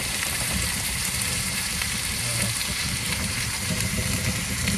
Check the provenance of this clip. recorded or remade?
remade